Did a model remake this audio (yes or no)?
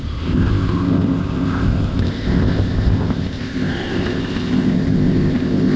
yes